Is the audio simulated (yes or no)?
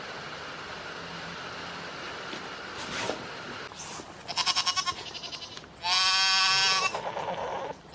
no